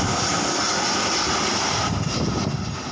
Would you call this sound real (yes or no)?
yes